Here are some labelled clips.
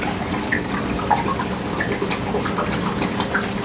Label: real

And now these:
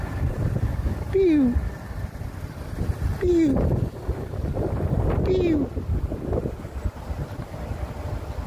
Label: real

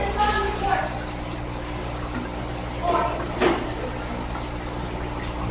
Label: real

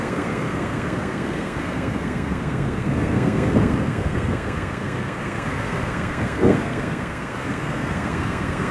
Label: fake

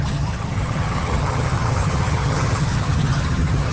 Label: fake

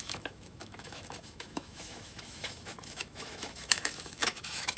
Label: fake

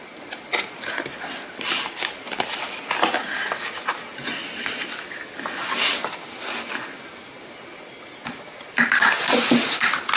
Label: real